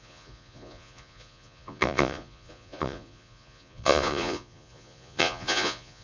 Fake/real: fake